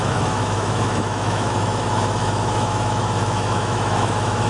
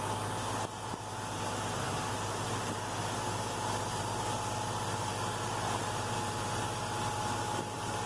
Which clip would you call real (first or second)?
second